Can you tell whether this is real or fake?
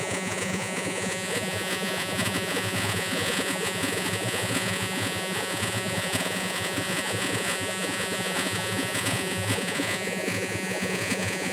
fake